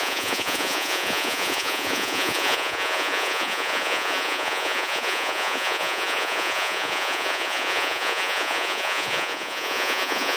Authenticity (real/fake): fake